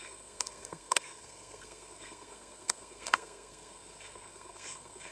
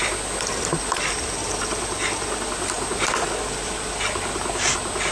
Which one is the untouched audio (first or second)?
second